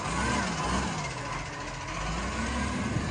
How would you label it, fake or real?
real